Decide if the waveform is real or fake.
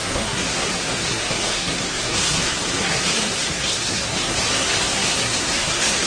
fake